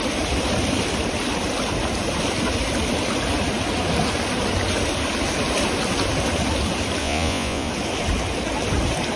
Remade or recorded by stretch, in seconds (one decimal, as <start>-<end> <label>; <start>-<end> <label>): 0.0-7.0 recorded; 7.0-7.7 remade; 7.7-9.2 recorded